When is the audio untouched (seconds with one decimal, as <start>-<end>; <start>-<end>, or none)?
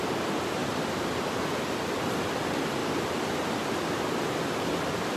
0.0-5.2